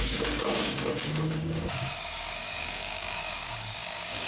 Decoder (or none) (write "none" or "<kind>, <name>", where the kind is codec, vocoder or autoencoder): codec, DAC